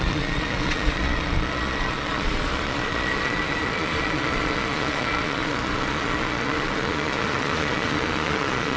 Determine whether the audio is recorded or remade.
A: remade